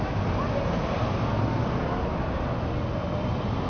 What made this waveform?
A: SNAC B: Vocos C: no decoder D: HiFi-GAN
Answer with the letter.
C